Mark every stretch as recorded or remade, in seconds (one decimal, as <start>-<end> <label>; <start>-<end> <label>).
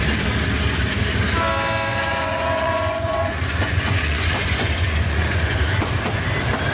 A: 0.0-1.9 recorded; 1.9-5.9 remade; 5.9-6.7 recorded